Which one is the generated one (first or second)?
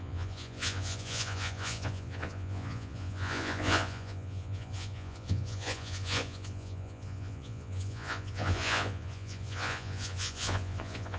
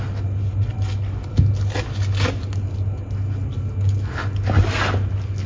first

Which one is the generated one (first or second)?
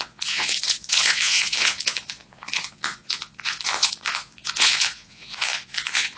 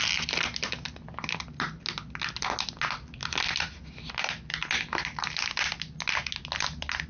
first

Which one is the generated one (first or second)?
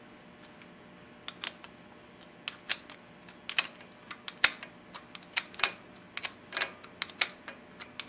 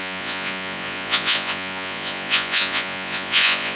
second